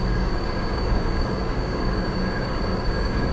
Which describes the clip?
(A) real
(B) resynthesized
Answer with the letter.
B